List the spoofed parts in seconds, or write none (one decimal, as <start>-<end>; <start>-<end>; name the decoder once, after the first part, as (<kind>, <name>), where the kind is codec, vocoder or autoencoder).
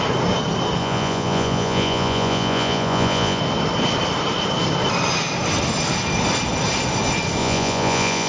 0.8-3.4 (vocoder, Vocos); 7.4-8.3